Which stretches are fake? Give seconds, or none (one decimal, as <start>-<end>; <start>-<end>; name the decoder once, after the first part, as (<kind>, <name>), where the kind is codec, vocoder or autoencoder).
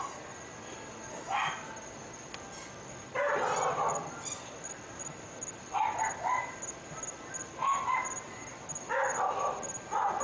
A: none